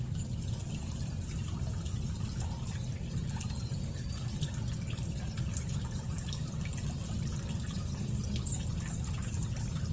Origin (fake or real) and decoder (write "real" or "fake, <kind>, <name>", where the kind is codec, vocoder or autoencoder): real